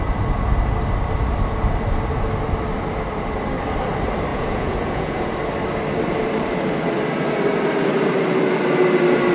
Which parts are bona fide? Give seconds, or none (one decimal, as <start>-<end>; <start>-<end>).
0.0-4.3; 5.3-9.3